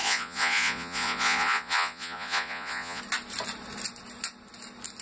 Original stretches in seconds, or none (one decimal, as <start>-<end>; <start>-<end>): 3.0-5.0